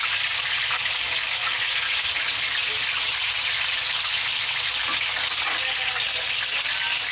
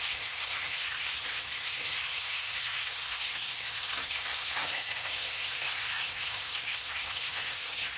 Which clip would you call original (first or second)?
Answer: first